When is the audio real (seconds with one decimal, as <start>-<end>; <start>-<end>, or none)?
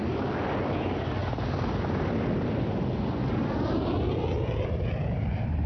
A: 0.0-5.7